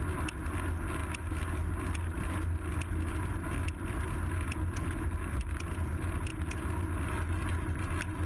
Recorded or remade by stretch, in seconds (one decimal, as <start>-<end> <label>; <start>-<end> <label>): 0.0-8.3 recorded